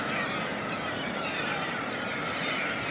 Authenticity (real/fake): real